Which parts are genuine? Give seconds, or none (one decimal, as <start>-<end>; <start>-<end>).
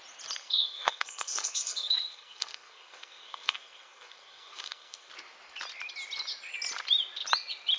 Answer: 0.0-0.4; 5.1-7.8